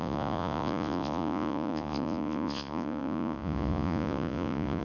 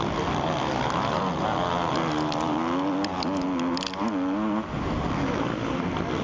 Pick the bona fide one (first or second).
second